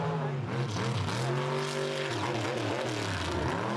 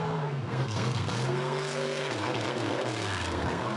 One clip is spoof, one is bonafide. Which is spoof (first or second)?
second